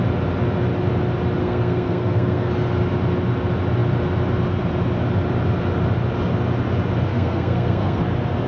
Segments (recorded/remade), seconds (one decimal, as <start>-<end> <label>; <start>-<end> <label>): 0.0-1.4 recorded; 1.4-2.5 remade; 2.5-7.1 recorded; 7.1-8.0 remade; 8.0-8.5 recorded